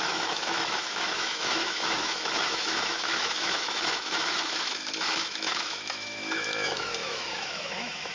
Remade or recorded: remade